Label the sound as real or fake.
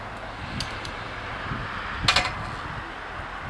real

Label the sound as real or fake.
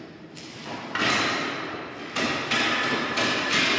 real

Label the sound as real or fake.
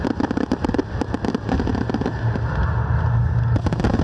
real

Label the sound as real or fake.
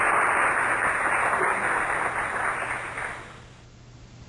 real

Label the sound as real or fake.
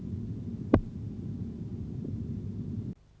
real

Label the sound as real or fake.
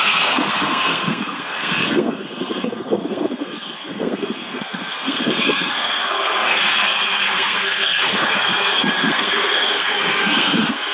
fake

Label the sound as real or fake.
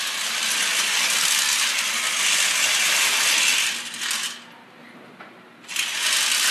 real